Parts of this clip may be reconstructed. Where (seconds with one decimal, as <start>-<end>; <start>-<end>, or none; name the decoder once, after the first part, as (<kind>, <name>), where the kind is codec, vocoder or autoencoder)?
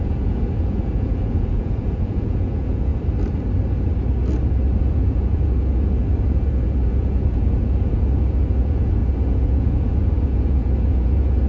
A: 0.0-2.9 (vocoder, Vocos); 4.8-11.5